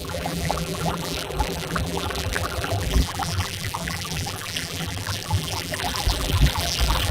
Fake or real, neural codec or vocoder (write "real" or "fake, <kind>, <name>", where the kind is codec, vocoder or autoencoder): fake, vocoder, BigVGAN v2